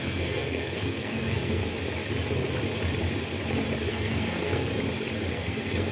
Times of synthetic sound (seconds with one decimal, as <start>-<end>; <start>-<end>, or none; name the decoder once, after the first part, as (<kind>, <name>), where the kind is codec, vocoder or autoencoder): 0.0-1.6 (codec, SNAC); 3.9-4.7; 5.3-5.9

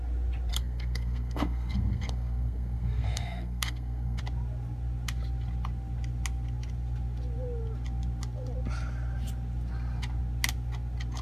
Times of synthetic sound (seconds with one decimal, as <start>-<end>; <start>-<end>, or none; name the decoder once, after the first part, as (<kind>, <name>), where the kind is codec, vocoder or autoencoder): 0.5-4.2 (codec, SNAC)

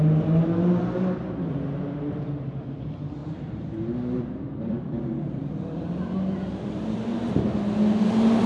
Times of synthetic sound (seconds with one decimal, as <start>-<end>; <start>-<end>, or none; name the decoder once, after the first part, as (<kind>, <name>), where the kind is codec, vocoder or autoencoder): 3.2-5.6 (vocoder, BigVGAN v2)

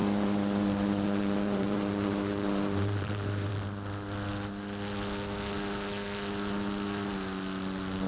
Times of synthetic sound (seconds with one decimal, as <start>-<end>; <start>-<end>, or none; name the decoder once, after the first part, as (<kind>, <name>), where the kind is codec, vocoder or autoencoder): 0.0-3.5 (vocoder, BigVGAN v2)